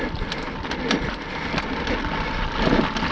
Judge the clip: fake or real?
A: real